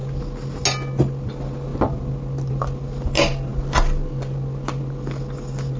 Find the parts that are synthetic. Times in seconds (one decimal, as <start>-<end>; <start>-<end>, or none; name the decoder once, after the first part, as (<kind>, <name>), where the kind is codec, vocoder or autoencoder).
none